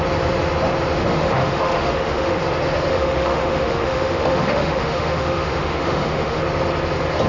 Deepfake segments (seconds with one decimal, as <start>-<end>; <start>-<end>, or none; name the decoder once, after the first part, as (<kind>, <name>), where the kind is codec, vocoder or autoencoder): 1.0-2.4 (autoencoder, DAC-VAE); 2.9-6.4

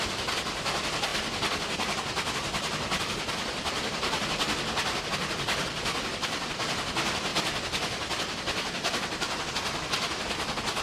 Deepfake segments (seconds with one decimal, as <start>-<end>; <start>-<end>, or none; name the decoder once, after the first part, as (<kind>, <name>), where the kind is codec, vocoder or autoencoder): none

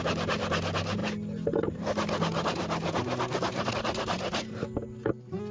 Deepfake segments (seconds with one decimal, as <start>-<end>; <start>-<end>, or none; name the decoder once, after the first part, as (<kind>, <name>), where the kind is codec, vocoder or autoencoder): none

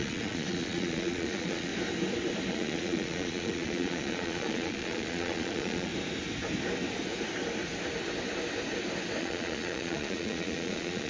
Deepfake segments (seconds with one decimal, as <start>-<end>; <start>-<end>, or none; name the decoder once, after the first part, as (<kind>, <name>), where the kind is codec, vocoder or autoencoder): 0.0-1.7 (vocoder, Vocos); 2.5-5.9; 9.2-11.1